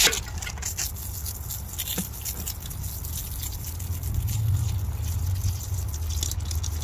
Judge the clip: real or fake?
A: real